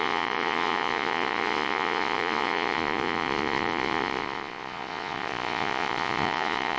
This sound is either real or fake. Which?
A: fake